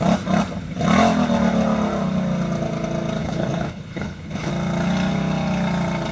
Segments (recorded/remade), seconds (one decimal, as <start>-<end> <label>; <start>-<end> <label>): 0.0-3.2 recorded; 3.2-4.5 remade; 4.5-6.1 recorded